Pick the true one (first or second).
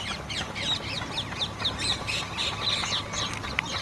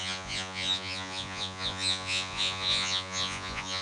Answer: first